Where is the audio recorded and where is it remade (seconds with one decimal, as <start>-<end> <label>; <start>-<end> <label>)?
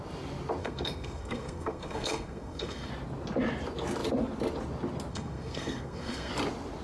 0.0-0.6 recorded; 0.6-2.9 remade; 2.9-5.1 recorded; 5.1-6.3 remade; 6.3-6.8 recorded